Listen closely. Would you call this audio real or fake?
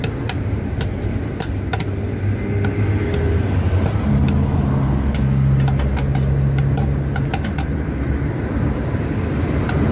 real